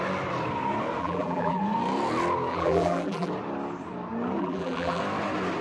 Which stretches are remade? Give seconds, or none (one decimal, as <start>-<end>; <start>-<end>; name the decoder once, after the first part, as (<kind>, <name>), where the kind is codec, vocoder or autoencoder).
1.0-1.6 (vocoder, BigVGAN v2); 2.5-3.3; 4.4-5.0